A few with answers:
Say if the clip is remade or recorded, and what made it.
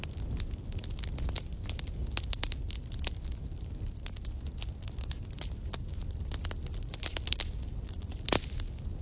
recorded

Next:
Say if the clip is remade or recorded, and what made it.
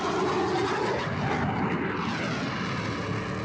recorded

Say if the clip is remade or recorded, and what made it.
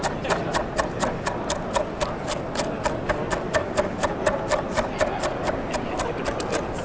recorded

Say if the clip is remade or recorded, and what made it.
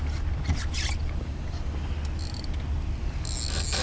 recorded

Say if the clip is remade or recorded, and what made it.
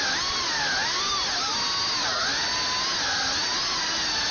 recorded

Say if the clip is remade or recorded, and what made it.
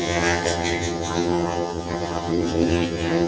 remade, vocoder, HiFi-GAN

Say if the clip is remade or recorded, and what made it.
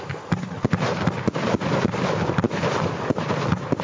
recorded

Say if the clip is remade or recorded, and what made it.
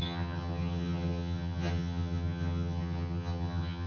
remade, vocoder, HiFi-GAN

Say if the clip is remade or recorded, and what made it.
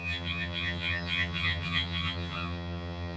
remade, vocoder, HiFi-GAN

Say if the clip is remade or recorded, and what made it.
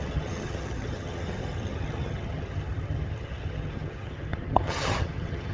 remade, vocoder, HiFi-GAN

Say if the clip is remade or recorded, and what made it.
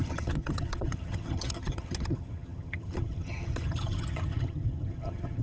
remade, vocoder, HiFi-GAN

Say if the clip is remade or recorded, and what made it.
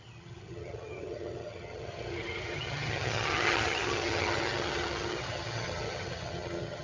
remade, vocoder, HiFi-GAN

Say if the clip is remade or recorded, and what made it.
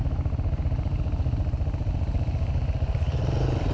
recorded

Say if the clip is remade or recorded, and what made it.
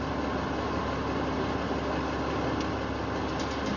recorded